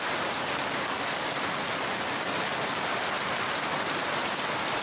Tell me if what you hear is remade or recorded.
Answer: recorded